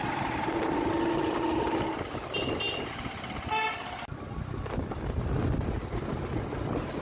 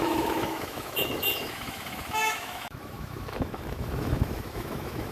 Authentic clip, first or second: first